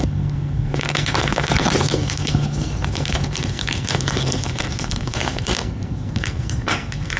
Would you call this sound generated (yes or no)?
yes